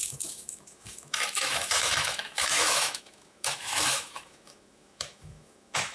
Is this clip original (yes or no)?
no